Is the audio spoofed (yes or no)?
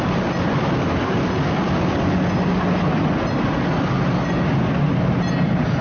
no